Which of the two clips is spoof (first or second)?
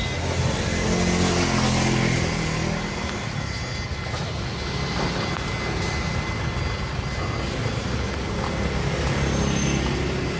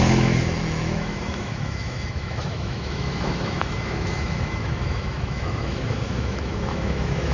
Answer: second